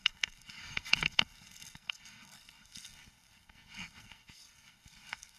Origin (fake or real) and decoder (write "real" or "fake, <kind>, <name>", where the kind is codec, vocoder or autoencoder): fake, codec, SNAC